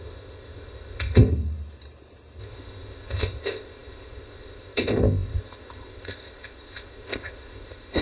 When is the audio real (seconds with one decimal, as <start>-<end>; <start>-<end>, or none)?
1.3-2.4